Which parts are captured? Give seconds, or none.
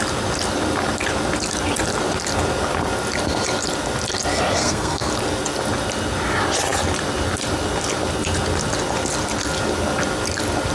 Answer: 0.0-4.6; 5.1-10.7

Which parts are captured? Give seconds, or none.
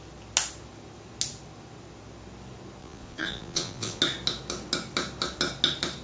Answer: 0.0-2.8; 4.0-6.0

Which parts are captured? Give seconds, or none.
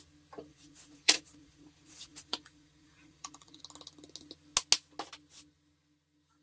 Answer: 0.0-0.5; 3.6-6.4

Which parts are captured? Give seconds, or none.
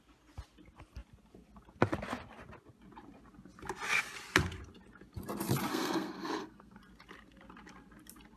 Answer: 0.0-5.7; 6.8-8.4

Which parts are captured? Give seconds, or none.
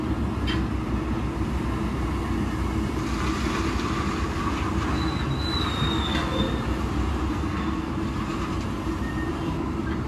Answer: 0.0-7.3; 7.9-10.1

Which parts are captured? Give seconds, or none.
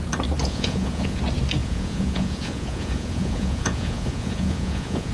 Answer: 0.0-0.4; 1.2-1.6